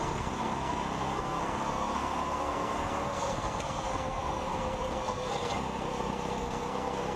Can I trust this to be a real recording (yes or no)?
no